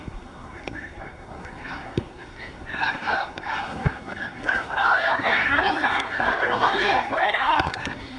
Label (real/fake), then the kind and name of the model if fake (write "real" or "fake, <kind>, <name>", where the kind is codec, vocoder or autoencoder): fake, codec, SNAC